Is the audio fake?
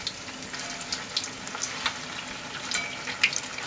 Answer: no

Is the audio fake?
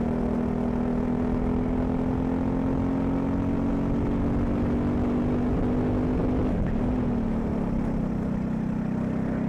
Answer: no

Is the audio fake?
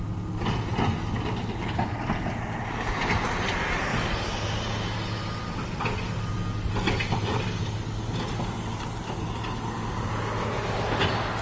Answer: no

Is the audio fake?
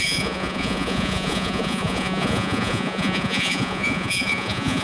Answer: yes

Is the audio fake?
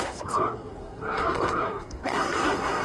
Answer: yes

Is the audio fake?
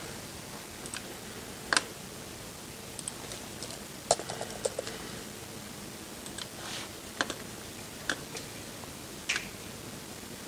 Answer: no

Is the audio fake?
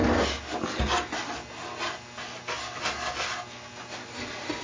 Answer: no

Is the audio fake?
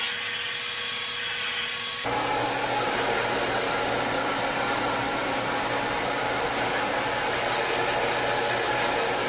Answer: no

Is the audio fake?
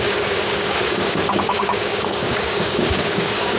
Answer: yes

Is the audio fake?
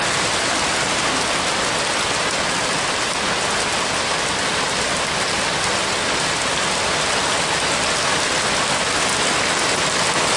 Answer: no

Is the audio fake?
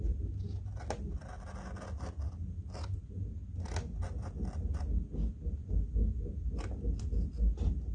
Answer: no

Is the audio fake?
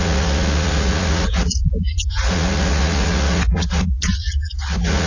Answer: yes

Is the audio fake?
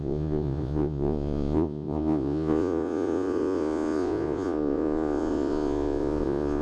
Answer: yes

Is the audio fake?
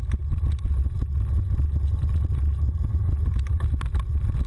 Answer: no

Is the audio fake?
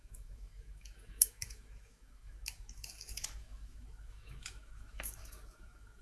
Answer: yes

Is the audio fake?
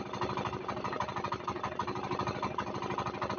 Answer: no